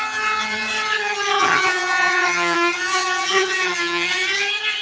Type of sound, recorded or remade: remade